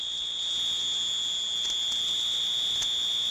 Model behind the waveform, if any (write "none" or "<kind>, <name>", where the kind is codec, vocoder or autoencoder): none